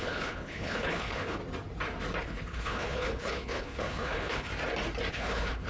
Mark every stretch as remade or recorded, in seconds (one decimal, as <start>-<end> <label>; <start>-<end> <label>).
0.0-1.4 remade; 1.4-2.2 recorded; 2.2-4.5 remade; 4.5-5.1 recorded; 5.1-5.7 remade